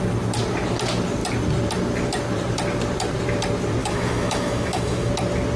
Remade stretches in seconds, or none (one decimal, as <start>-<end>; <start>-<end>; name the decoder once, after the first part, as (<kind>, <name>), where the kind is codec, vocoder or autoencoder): 3.8-5.1 (autoencoder, DAC-VAE)

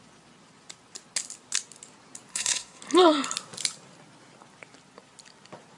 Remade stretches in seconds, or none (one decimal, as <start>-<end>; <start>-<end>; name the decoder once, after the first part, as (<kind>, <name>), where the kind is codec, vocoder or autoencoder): 2.3-2.8 (codec, SNAC)

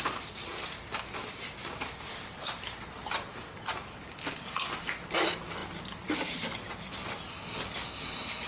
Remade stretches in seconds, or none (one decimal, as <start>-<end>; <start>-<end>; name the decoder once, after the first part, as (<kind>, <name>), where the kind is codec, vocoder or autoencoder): none

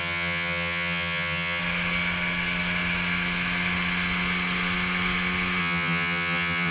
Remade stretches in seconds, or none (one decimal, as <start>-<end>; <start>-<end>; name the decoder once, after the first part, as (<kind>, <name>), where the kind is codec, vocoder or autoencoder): 0.0-1.6 (vocoder, HiFi-GAN); 5.6-6.7